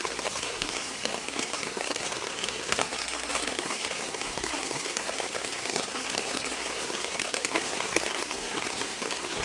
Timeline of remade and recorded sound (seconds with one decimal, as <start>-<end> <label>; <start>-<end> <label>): 0.0-9.4 remade